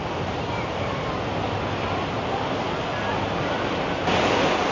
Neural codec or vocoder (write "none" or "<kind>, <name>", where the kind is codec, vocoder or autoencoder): none